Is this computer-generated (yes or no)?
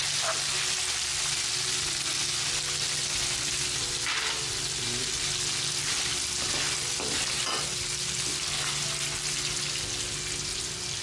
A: no